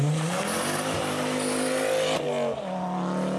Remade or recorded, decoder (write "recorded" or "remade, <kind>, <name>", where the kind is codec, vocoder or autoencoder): recorded